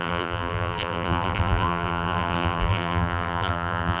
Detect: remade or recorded remade